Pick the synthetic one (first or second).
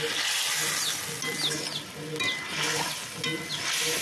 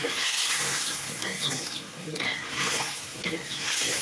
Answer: second